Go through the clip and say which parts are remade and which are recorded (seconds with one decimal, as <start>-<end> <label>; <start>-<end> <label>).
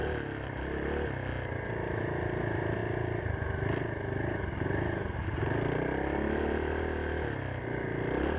0.0-8.4 recorded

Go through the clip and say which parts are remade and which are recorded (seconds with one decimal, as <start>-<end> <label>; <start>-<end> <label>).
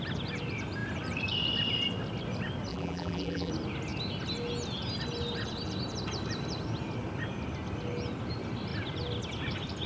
0.0-2.7 recorded; 2.7-3.5 remade; 3.5-9.9 recorded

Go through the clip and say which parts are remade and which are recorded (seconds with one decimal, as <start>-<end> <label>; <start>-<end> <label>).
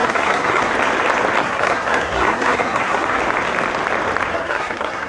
0.0-0.7 remade; 0.7-1.4 recorded; 1.4-3.2 remade; 3.2-4.3 recorded; 4.3-5.1 remade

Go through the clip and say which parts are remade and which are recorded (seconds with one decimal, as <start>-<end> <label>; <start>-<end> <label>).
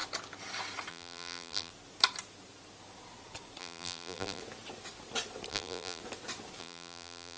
0.0-0.9 recorded; 0.9-1.7 remade; 1.7-3.6 recorded; 3.6-4.4 remade; 4.4-5.5 recorded; 5.5-6.0 remade; 6.0-6.6 recorded; 6.6-7.4 remade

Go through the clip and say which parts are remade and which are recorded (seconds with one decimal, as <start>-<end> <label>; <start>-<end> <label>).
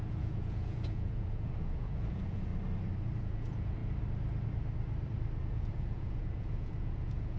0.0-2.5 remade; 2.5-3.2 recorded; 3.2-3.8 remade; 3.8-5.5 recorded; 5.5-7.4 remade